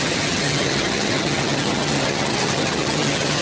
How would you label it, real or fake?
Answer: fake